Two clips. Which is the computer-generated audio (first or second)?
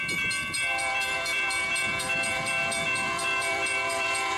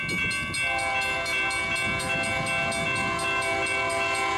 first